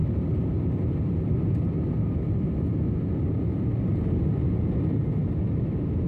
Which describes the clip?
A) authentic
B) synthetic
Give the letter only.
A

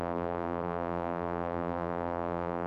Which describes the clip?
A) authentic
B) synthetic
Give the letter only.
B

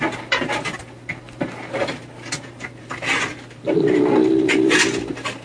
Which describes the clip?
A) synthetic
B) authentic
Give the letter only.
B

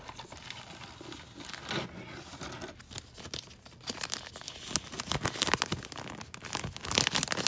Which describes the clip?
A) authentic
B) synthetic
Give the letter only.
A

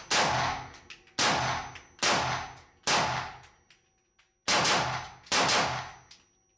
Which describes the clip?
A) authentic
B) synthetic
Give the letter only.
A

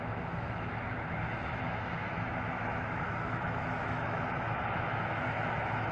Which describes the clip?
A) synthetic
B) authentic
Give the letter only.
A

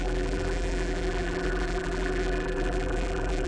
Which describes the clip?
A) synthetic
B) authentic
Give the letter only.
A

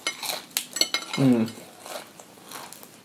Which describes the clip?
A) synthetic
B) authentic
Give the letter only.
B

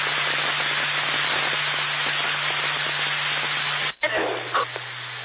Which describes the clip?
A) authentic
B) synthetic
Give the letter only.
A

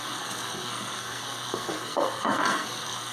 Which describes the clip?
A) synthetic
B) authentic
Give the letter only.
A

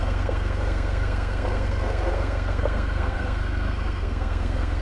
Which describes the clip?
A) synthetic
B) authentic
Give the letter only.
A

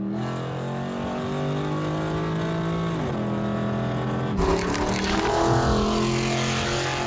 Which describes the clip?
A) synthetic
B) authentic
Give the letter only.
B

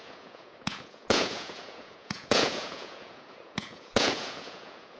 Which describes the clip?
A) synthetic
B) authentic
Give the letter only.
A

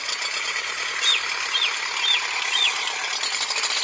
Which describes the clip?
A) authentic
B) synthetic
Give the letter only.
A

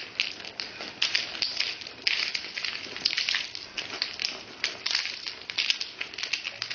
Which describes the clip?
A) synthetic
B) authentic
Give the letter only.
B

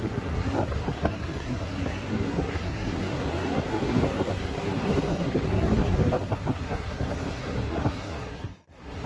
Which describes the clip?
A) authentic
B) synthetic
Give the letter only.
B